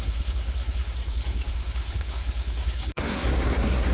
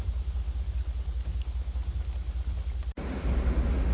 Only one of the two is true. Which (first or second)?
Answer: second